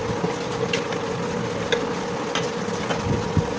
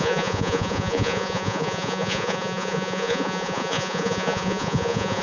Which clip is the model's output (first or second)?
second